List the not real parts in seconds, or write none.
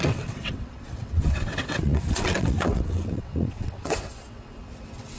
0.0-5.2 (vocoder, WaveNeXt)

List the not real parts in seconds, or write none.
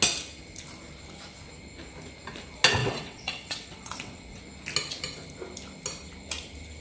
2.8-4.4 (vocoder, WaveNeXt)